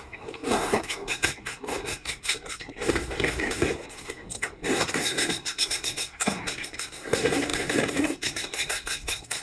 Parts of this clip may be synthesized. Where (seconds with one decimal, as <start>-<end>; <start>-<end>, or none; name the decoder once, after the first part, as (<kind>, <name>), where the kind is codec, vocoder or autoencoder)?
0.0-9.4 (codec, SNAC)